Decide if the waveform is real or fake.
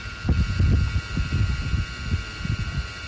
real